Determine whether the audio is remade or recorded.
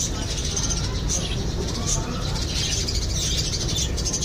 recorded